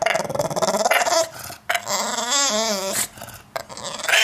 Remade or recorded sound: recorded